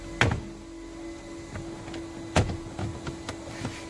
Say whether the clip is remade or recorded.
recorded